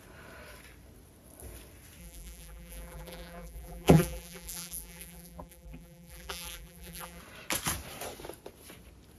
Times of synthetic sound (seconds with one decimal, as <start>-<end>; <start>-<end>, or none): 2.0-7.2